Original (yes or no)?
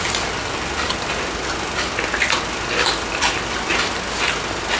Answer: yes